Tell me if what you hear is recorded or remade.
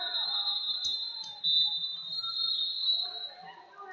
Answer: recorded